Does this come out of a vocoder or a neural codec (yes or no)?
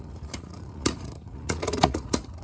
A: yes